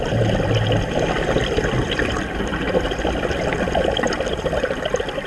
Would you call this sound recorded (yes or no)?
yes